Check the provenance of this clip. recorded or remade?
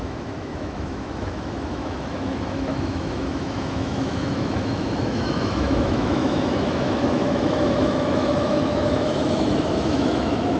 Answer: remade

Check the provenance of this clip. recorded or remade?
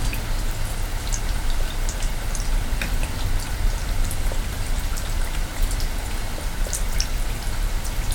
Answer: recorded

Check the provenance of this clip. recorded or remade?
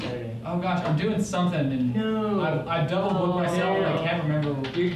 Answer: recorded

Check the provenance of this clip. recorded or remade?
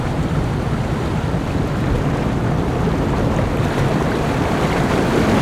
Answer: recorded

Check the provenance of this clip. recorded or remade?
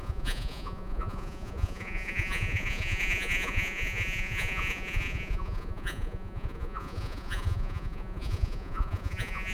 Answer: remade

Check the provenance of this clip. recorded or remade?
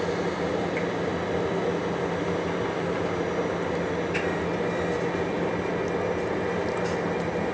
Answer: recorded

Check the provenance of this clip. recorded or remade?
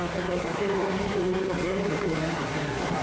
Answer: remade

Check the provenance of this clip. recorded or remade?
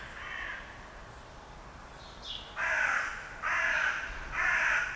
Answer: remade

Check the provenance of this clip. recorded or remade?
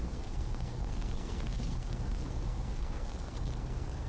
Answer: remade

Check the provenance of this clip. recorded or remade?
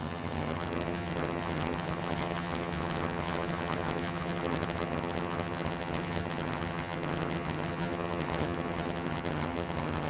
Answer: remade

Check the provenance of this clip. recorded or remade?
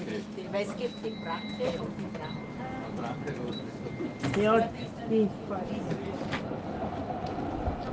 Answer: recorded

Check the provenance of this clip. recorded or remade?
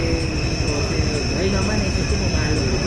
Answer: recorded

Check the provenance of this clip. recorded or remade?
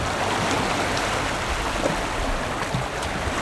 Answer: recorded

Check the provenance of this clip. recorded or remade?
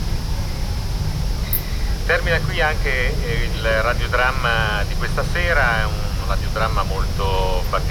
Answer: recorded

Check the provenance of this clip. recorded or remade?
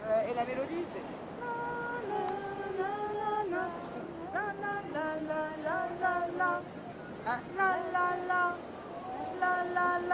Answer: recorded